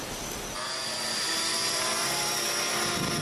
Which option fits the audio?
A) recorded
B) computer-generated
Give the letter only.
A